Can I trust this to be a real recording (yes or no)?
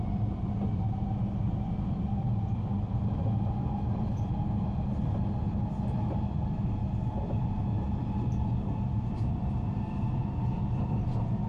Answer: yes